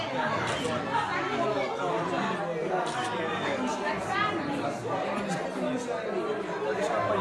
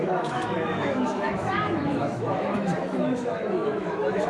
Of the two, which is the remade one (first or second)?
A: second